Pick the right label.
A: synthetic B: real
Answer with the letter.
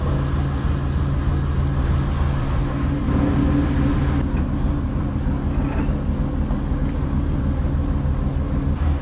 B